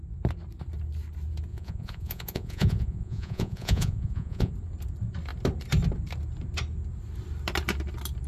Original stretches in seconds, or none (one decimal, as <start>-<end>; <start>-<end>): 0.0-1.5; 4.5-8.3